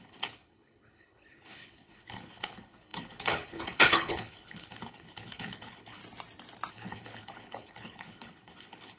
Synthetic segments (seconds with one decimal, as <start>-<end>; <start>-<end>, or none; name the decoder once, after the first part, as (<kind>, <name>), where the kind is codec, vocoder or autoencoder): 0.0-6.0 (codec, HILCodec); 6.7-9.0